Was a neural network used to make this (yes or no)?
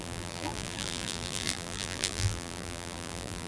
yes